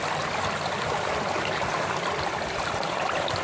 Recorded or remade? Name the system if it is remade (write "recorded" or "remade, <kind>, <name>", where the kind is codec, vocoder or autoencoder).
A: recorded